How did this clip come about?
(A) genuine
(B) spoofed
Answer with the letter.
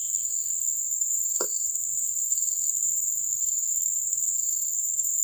B